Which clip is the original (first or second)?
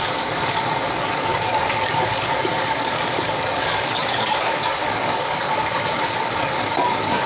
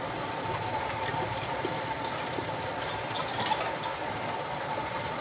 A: second